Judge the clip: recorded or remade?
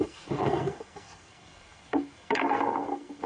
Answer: remade